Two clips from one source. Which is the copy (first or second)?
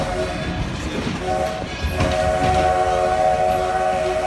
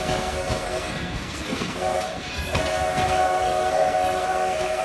second